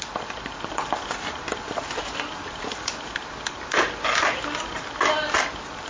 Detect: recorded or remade remade